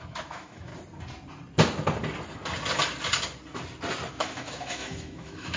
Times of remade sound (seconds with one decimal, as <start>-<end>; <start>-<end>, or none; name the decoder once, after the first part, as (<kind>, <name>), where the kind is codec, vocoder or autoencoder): 0.0-0.7 (autoencoder, DAC-VAE); 4.1-5.6